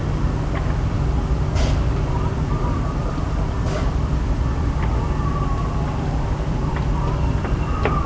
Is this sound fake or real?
fake